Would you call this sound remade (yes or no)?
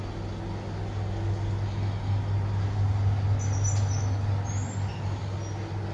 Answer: no